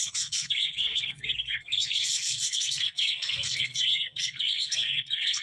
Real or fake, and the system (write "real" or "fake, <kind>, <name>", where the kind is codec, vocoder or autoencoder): fake, codec, SNAC